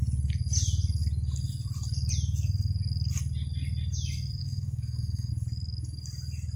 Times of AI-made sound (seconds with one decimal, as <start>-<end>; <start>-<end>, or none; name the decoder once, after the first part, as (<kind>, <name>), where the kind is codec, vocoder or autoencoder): 4.4-5.3 (codec, SNAC)